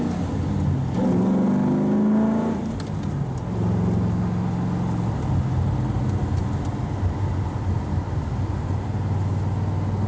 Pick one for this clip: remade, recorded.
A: recorded